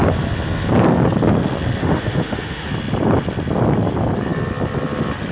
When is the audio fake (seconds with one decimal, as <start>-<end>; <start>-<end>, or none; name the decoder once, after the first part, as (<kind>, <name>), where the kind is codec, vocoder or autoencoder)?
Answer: 1.8-2.7 (autoencoder, DAC-VAE)